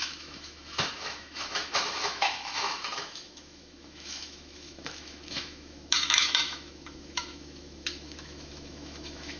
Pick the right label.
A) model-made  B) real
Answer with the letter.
A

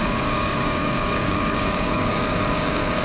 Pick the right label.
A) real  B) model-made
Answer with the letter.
B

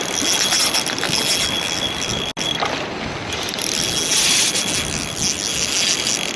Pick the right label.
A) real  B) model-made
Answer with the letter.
A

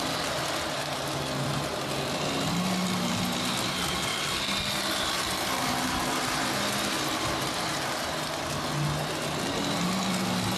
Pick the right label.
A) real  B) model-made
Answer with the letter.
A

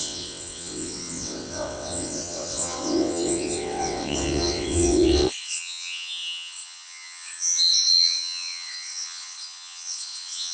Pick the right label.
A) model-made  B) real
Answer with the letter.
A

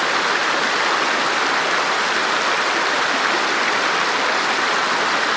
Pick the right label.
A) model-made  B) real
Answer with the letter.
B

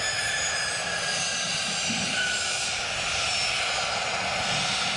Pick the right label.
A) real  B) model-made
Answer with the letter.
A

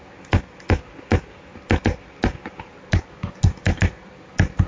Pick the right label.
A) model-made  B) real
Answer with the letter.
B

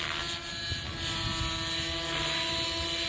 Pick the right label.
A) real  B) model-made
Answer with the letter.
A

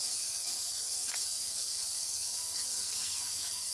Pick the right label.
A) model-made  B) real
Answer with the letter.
A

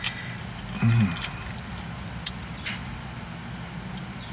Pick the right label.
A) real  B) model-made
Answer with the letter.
A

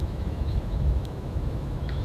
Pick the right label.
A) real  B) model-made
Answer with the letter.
B